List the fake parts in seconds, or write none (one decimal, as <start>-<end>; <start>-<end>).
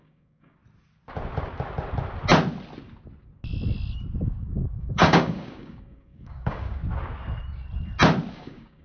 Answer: 0.0-0.6; 4.2-6.8; 8.3-8.8